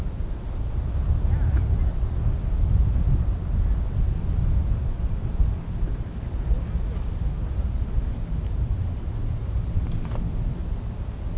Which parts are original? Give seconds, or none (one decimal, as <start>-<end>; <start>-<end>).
0.8-4.8; 7.0-11.4